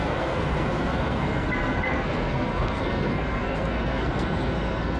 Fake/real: fake